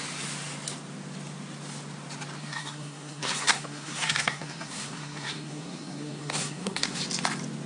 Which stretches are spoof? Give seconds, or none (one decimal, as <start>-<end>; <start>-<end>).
2.4-7.0